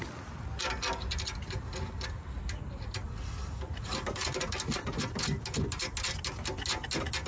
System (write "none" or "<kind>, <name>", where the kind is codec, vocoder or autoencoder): none